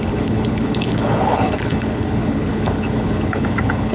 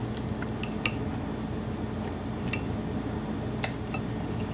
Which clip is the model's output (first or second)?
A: first